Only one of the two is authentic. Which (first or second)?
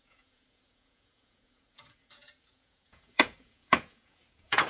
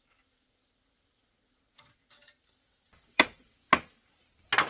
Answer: second